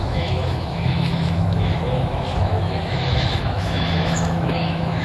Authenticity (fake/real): fake